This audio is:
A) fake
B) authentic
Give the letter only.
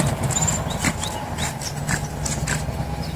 B